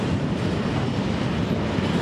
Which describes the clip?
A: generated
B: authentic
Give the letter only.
B